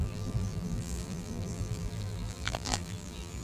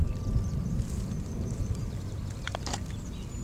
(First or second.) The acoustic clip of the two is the second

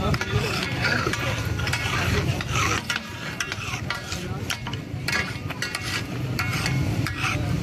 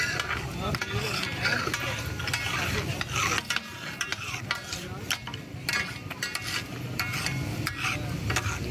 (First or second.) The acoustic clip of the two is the second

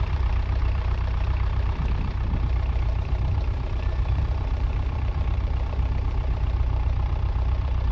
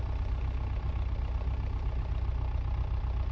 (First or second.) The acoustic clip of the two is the second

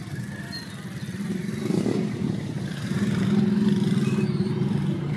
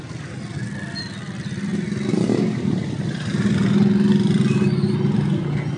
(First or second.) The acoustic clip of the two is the second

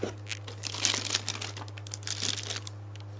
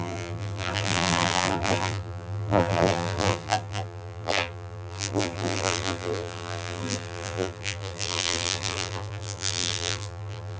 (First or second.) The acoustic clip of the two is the first